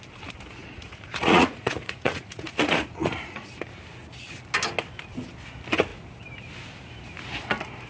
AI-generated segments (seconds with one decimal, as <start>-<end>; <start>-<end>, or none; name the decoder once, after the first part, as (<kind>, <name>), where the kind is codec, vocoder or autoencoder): 0.6-3.5 (vocoder, Vocos)